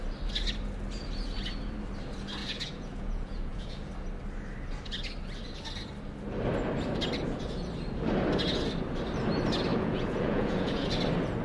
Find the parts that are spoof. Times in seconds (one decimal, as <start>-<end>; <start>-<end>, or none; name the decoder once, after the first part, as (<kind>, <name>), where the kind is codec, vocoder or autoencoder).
2.4-3.9 (vocoder, Vocos); 9.7-11.0